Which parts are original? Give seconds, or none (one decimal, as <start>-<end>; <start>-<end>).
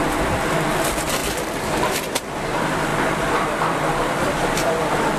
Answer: 0.0-1.2; 1.9-2.9; 4.5-5.2